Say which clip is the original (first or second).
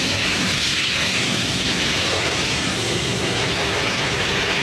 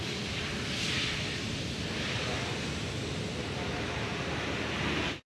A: second